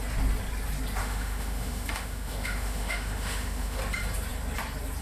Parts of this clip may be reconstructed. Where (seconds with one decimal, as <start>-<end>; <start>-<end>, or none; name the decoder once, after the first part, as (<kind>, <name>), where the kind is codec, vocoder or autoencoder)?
1.0-3.8 (autoencoder, DAC-VAE)